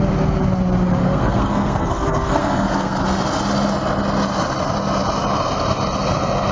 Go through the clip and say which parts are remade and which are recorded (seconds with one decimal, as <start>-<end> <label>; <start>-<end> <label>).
0.0-1.0 recorded; 1.0-3.0 remade; 3.0-6.5 recorded